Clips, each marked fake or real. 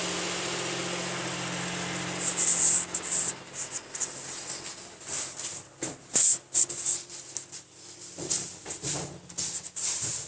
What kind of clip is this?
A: real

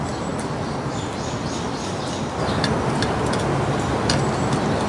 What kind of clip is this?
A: real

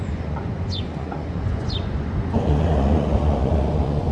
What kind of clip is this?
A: fake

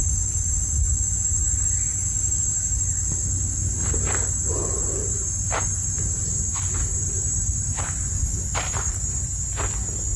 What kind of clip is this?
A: real